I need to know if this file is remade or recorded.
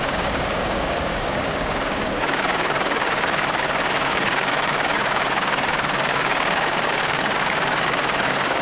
remade